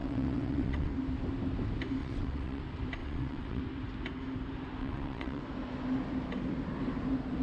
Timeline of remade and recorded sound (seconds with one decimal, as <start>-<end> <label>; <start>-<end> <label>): 0.0-0.9 remade; 0.9-2.0 recorded; 2.0-2.6 remade; 2.6-3.0 recorded; 3.0-3.6 remade; 3.6-4.8 recorded; 4.8-5.4 remade; 5.4-7.4 recorded